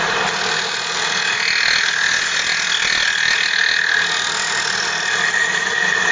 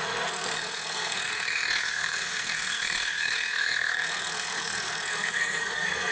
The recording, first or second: first